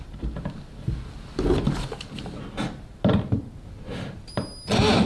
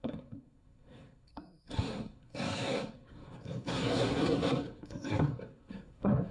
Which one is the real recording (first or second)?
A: first